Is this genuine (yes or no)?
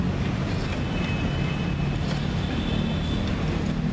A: yes